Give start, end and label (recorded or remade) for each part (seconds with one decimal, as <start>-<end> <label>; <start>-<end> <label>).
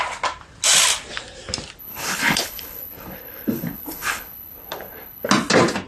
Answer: 0.0-1.8 recorded; 1.8-5.3 remade; 5.3-5.9 recorded